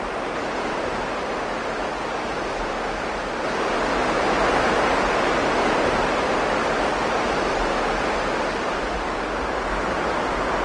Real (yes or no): yes